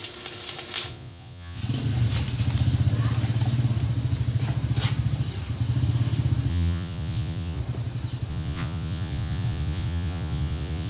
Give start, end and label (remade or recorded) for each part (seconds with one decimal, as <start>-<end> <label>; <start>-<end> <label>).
0.0-0.9 recorded; 0.9-1.6 remade; 1.6-6.5 recorded; 6.5-7.6 remade; 7.6-8.3 recorded; 8.3-10.9 remade